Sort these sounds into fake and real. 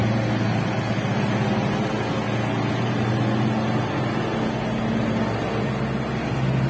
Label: real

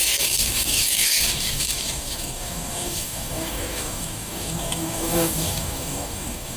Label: fake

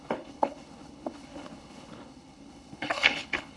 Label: fake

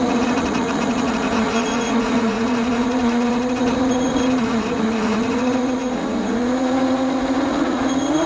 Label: fake